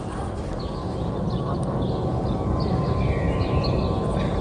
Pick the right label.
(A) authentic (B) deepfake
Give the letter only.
A